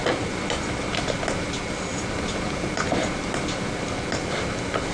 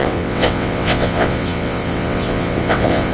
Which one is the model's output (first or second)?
second